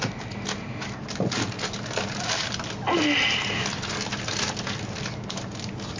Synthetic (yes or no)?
no